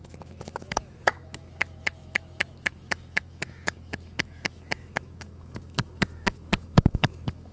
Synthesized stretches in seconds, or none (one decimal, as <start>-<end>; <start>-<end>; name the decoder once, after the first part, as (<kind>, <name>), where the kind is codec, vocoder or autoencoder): 0.0-7.5 (autoencoder, DAC-VAE)